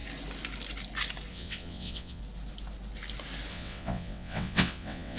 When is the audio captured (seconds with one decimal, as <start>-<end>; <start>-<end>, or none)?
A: 0.0-1.3; 2.2-3.5